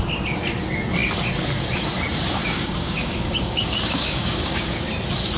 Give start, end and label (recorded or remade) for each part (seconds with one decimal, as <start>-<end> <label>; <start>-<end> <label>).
0.0-2.4 recorded; 2.4-4.9 remade; 4.9-5.4 recorded

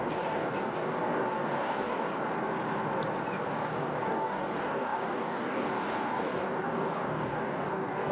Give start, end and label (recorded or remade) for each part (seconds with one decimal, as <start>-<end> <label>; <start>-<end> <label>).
0.0-2.1 remade; 2.1-3.5 recorded; 3.5-8.1 remade

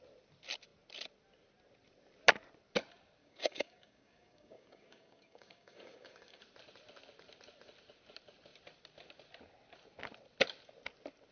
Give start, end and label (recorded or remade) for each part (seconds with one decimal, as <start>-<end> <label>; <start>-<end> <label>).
0.0-3.2 recorded; 3.2-6.4 remade; 6.4-11.3 recorded

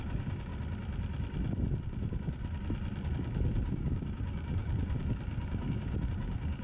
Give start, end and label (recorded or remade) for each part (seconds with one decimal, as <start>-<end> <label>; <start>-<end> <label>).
0.0-0.5 remade; 0.5-1.8 recorded; 1.8-2.4 remade; 2.4-3.0 recorded; 3.0-6.6 remade

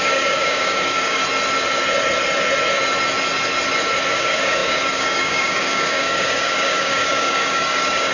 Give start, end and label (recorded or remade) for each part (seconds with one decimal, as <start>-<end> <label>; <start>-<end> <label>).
0.0-1.2 remade; 1.2-4.1 recorded; 4.1-8.1 remade

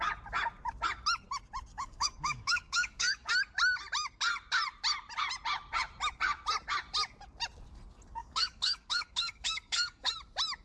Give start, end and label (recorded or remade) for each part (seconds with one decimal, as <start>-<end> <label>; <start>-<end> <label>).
0.0-1.7 recorded; 1.7-3.3 remade; 3.3-8.2 recorded; 8.2-10.1 remade; 10.1-10.6 recorded